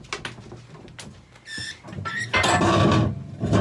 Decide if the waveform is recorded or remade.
recorded